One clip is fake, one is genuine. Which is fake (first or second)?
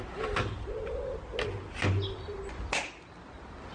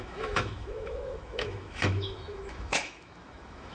second